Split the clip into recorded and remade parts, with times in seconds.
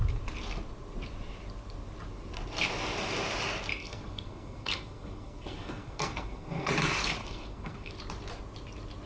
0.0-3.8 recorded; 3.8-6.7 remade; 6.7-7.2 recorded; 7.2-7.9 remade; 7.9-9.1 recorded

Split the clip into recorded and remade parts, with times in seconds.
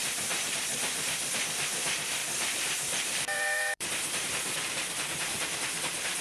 0.0-1.4 remade; 1.4-2.2 recorded; 2.2-6.2 remade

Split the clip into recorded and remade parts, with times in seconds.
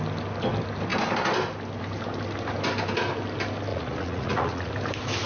0.0-3.7 recorded; 3.7-4.7 remade; 4.7-5.3 recorded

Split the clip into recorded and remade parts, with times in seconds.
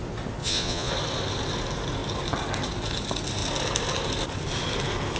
0.0-0.4 recorded; 0.4-0.9 remade; 0.9-5.2 recorded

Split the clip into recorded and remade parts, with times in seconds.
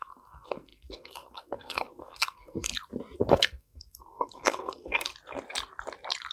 0.0-2.7 remade; 2.7-3.3 recorded; 3.3-5.1 remade; 5.1-6.3 recorded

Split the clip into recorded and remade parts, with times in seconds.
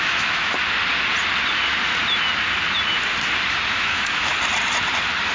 0.0-0.5 remade; 0.5-3.7 recorded; 3.7-4.3 remade; 4.3-5.3 recorded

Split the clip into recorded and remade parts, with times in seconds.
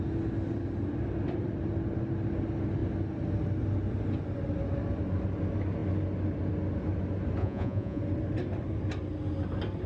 0.0-7.4 recorded; 7.4-8.0 remade; 8.0-9.9 recorded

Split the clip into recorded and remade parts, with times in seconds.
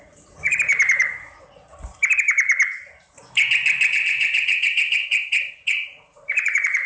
0.0-0.7 remade; 0.7-1.2 recorded; 1.2-1.7 remade; 1.7-3.9 recorded; 3.9-6.9 remade